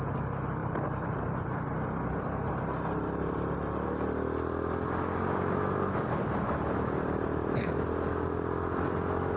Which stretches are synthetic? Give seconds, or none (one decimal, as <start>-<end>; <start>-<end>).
0.6-1.1